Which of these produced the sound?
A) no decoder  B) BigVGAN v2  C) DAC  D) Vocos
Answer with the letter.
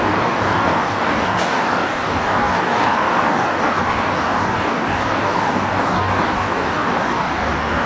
C